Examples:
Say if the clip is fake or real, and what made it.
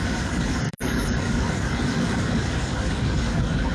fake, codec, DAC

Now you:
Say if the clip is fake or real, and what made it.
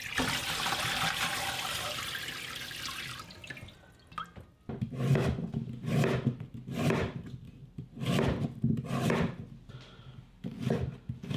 real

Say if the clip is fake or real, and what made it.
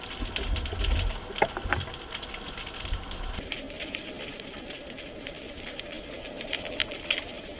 real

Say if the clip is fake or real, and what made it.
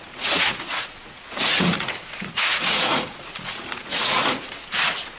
fake, vocoder, Vocos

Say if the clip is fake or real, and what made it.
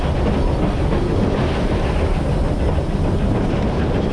real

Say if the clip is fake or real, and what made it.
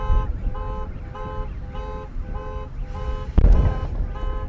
real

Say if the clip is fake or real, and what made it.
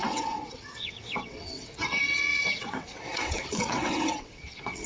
fake, vocoder, WaveNeXt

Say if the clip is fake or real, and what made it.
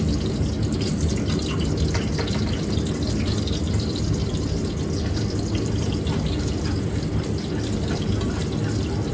real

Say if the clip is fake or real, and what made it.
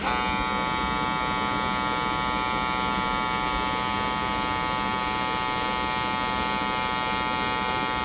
real